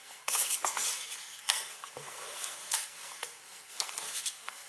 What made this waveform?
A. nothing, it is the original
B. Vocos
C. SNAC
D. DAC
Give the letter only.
C